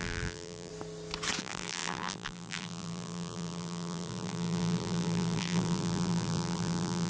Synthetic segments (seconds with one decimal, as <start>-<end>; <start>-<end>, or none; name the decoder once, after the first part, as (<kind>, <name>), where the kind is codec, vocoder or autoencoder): 0.0-0.7 (vocoder, BigVGAN v2); 1.4-7.1